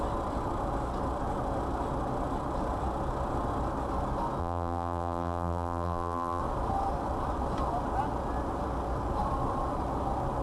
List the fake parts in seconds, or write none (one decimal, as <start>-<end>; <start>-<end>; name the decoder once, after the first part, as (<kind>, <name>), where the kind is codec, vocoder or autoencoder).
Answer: 4.4-6.4 (vocoder, BigVGAN v2)